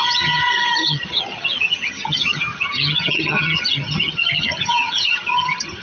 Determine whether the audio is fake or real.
fake